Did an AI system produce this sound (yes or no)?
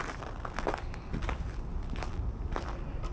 no